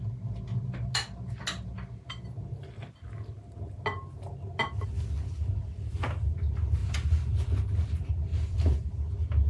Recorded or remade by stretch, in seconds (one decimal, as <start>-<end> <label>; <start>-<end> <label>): 0.0-8.3 recorded; 8.3-8.9 remade; 8.9-9.5 recorded